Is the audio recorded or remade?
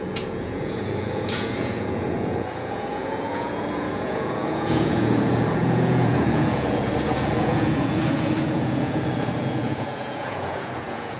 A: remade